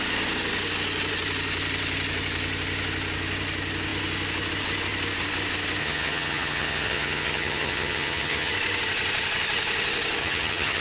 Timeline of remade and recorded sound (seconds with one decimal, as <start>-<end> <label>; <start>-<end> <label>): 0.0-5.8 recorded; 5.8-8.5 remade; 8.5-10.2 recorded; 10.2-10.8 remade